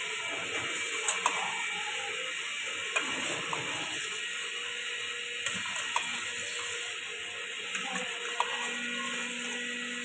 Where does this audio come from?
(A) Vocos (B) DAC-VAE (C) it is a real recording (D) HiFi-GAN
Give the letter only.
C